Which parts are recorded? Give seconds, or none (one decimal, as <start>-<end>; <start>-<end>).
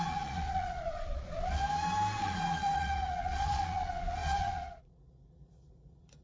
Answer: 1.6-2.2